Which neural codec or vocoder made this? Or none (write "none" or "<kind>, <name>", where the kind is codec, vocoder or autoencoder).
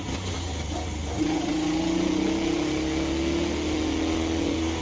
none